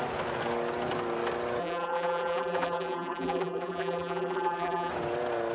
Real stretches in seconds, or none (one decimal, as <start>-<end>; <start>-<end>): 0.0-1.6; 4.9-5.5